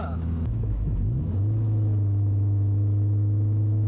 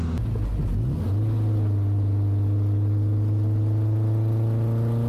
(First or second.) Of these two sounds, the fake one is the first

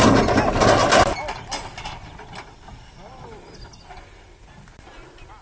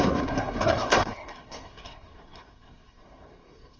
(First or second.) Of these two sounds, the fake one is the second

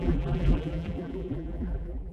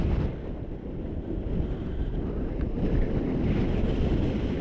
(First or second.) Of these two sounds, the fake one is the first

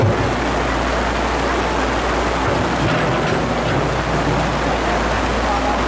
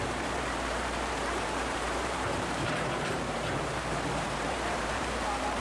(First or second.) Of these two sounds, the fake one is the second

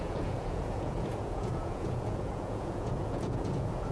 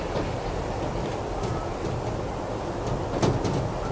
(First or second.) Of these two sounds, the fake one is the first